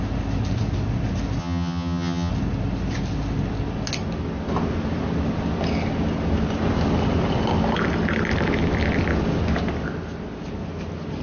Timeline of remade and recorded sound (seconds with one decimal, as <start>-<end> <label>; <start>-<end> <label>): 0.0-1.4 recorded; 1.4-2.3 remade; 2.3-11.2 recorded